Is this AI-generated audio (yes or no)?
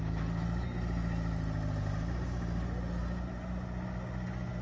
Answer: no